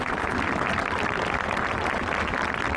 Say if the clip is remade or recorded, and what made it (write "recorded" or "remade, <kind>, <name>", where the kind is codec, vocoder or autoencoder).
recorded